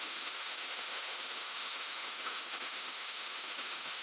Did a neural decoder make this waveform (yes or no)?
yes